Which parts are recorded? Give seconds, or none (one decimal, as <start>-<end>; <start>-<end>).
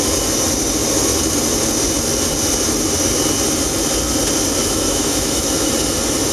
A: 0.0-4.6; 5.7-6.3